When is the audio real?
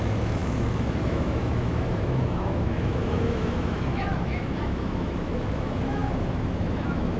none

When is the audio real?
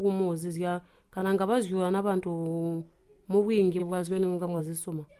0.0-3.8; 4.6-5.2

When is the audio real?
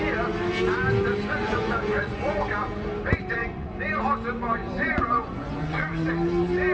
0.0-1.4; 2.4-3.4; 4.0-4.6; 6.1-6.7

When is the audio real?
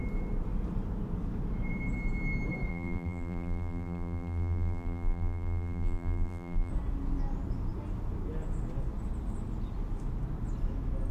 0.0-2.7; 6.7-11.1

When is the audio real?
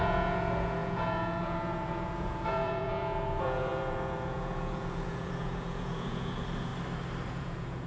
6.7-7.3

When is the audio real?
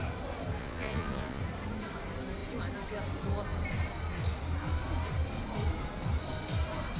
0.0-0.6; 1.4-7.0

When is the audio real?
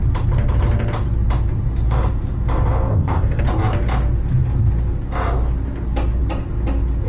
0.0-2.9; 3.4-7.1